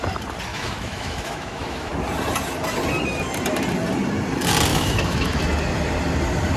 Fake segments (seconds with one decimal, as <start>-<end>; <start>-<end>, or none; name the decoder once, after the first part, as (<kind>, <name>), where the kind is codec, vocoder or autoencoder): 0.5-1.9 (autoencoder, DAC-VAE); 4.7-5.4